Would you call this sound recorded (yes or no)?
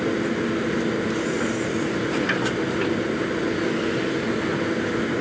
yes